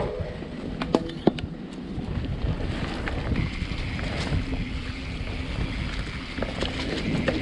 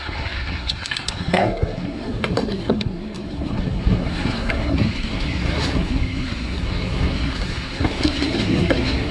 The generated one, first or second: second